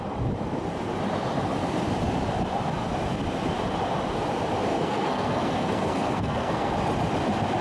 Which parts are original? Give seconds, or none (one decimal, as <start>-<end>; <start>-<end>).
0.0-4.7; 6.7-7.6